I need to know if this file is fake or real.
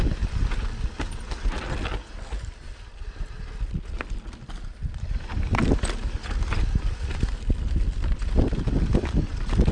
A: real